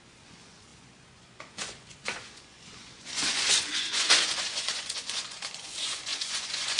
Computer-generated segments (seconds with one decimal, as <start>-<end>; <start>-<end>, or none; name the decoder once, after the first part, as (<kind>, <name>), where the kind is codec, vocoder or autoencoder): 0.0-6.8 (vocoder, Vocos)